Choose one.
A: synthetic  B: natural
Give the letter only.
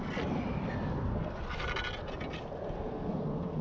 B